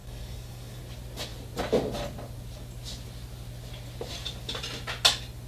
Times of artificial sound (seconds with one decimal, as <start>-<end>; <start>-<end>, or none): 0.0-0.8